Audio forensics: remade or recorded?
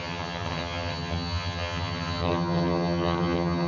remade